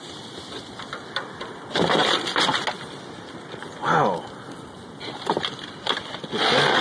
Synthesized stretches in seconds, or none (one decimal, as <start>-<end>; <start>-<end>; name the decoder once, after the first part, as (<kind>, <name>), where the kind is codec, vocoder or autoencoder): none